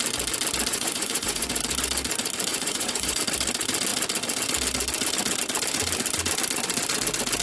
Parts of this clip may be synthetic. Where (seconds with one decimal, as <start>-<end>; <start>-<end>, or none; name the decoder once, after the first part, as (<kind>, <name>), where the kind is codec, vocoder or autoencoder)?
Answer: 0.7-1.5 (vocoder, Vocos); 2.5-3.2